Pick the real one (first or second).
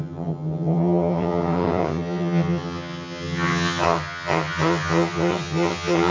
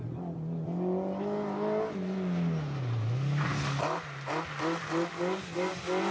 second